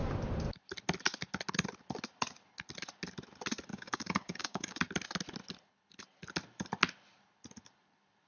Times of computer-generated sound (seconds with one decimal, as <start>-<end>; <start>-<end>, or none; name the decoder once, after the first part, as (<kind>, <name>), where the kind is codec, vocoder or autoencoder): 3.7-4.8 (codec, DAC)